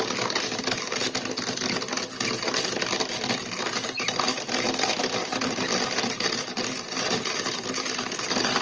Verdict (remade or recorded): recorded